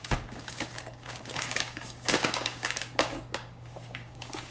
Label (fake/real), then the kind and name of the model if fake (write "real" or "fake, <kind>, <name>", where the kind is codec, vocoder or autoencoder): fake, codec, DAC